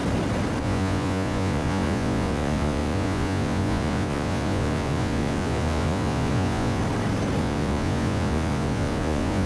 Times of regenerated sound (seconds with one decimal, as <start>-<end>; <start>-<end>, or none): 0.6-6.8; 7.4-9.5